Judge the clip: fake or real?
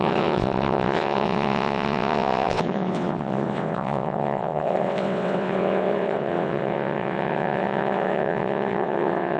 fake